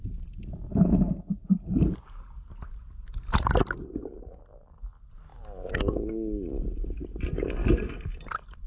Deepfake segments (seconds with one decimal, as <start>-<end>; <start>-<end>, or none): none